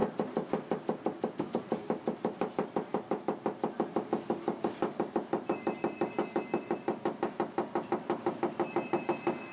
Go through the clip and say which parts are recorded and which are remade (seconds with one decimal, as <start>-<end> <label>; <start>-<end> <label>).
0.0-9.5 recorded